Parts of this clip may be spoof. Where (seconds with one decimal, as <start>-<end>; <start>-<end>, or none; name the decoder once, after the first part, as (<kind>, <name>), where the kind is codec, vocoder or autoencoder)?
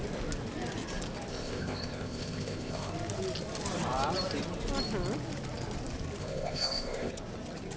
1.3-2.9 (codec, ZipCodec); 6.2-7.1